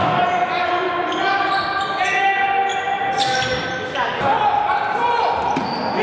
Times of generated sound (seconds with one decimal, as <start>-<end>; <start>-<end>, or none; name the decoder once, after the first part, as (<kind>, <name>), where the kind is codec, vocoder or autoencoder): 2.7-3.7 (vocoder, BigVGAN v2)